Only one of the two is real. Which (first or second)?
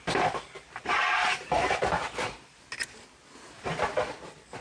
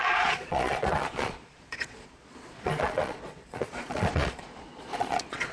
first